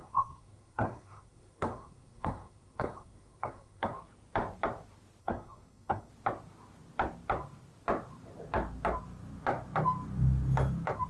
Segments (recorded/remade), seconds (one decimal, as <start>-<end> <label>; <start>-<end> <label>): 0.0-3.9 remade; 3.9-5.2 recorded; 5.2-6.1 remade; 6.1-11.1 recorded